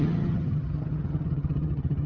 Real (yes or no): no